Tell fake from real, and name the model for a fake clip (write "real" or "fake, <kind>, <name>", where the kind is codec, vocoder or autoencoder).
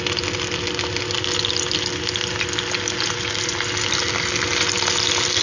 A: real